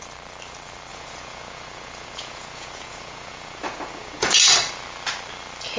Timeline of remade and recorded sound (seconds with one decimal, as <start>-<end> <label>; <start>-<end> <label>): 0.0-0.9 recorded; 0.9-4.4 remade; 4.4-5.8 recorded